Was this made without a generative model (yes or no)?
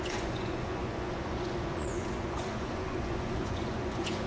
no